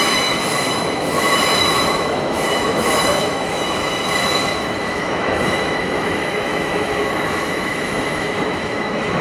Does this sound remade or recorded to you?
remade